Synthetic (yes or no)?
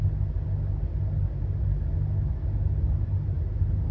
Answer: no